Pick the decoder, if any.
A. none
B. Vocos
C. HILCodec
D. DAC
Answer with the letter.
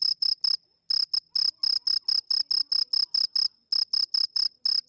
A